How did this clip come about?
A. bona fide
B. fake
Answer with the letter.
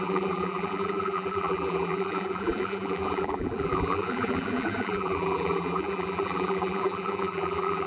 B